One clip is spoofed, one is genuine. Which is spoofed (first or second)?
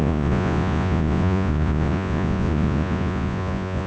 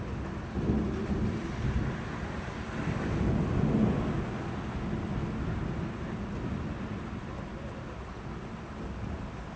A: first